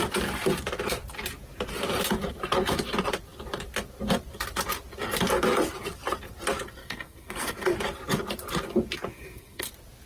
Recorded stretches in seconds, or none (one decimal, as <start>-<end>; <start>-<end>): 0.0-6.8; 7.7-9.1; 9.7-10.1

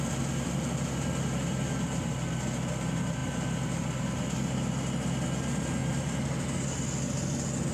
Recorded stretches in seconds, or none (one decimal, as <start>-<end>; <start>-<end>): 0.0-7.7